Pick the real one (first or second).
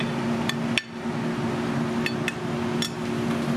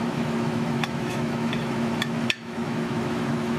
first